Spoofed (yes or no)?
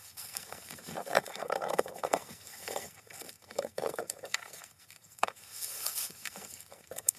yes